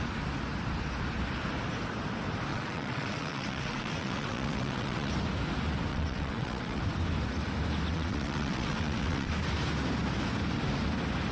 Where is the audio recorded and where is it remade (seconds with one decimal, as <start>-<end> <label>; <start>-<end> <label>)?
0.0-2.5 recorded; 2.5-5.1 remade; 5.1-5.9 recorded; 5.9-6.8 remade; 6.8-7.9 recorded; 7.9-9.3 remade; 9.3-11.3 recorded